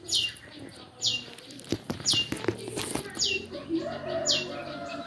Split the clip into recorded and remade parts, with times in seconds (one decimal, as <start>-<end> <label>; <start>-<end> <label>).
0.0-5.1 recorded